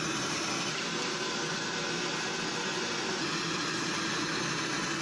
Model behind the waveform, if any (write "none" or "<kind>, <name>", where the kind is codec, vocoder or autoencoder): none